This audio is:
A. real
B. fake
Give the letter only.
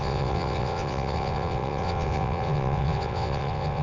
B